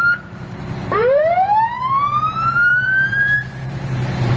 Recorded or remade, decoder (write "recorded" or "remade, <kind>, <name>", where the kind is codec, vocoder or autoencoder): remade, vocoder, BigVGAN v2